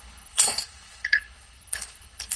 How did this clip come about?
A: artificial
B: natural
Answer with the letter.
A